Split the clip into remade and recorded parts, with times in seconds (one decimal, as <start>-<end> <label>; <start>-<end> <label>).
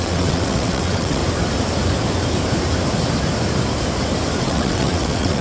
0.0-1.2 remade; 1.2-4.4 recorded; 4.4-5.4 remade